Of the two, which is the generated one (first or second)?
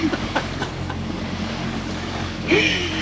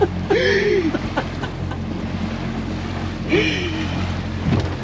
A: first